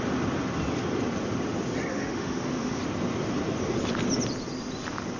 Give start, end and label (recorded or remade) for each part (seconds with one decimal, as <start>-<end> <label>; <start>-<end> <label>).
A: 0.0-1.9 recorded; 1.9-2.8 remade; 2.8-5.2 recorded